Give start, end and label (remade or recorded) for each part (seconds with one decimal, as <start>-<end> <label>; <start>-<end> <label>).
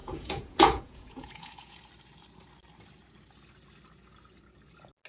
0.0-1.8 remade; 1.8-5.1 recorded